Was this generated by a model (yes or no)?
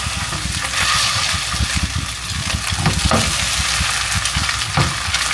no